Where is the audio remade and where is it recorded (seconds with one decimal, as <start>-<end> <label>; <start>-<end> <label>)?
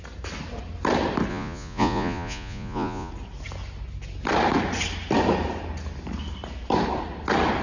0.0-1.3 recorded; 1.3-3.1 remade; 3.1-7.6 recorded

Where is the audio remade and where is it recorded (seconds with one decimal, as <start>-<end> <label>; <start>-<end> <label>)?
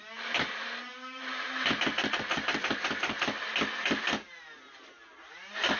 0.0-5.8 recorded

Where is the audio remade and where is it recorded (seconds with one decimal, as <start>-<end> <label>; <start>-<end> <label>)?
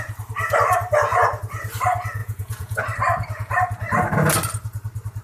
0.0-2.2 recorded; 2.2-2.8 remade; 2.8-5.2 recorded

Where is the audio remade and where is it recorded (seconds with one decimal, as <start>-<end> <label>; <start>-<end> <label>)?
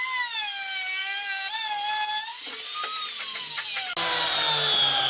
0.0-5.1 recorded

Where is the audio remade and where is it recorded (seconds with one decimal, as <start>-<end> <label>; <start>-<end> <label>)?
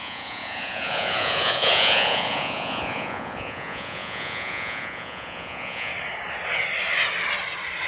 0.0-5.9 remade; 5.9-7.9 recorded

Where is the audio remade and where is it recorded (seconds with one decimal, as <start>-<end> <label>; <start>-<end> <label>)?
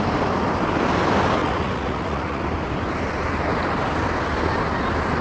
0.0-1.4 recorded; 1.4-2.4 remade; 2.4-5.2 recorded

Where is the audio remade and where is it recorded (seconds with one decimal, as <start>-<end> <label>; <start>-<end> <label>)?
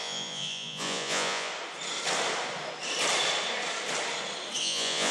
0.0-1.5 remade; 1.5-4.6 recorded; 4.6-5.1 remade